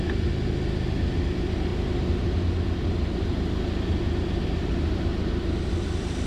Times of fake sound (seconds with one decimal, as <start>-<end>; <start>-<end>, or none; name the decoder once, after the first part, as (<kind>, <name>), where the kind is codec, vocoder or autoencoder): none